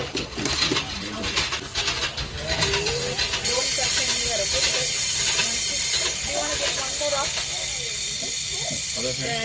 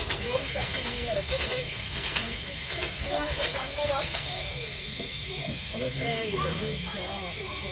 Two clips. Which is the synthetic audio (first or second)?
second